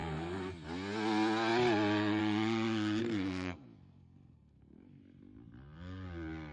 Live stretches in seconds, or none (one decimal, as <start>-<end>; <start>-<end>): 0.5-3.0; 5.0-6.5